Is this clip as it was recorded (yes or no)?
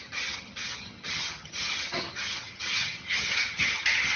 no